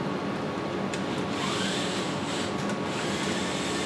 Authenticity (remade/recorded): recorded